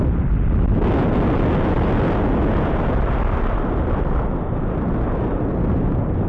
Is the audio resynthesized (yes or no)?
no